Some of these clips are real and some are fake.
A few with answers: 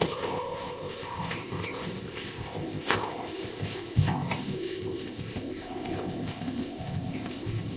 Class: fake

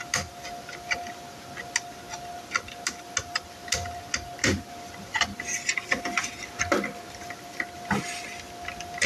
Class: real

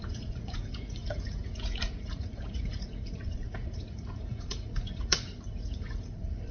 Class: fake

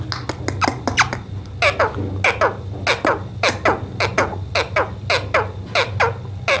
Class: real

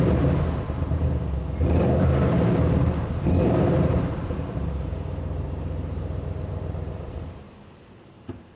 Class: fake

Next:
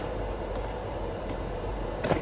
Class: fake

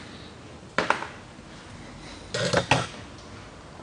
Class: real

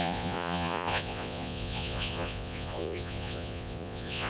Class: fake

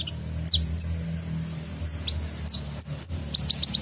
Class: real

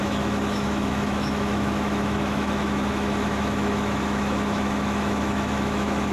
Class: fake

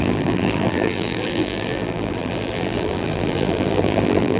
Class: fake